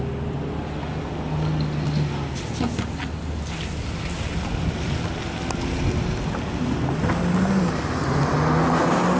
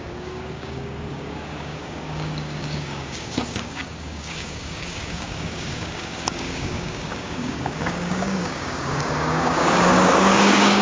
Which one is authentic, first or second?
first